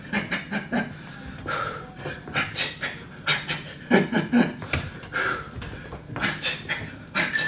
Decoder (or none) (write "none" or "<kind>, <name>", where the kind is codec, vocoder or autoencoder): none